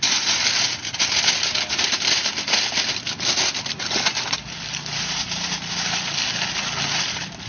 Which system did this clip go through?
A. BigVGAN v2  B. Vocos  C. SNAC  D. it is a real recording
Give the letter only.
D